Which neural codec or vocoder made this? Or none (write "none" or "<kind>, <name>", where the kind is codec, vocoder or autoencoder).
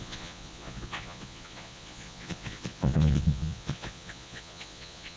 vocoder, Vocos